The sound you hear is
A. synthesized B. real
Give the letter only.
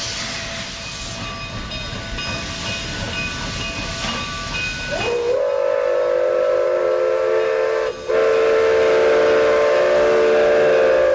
B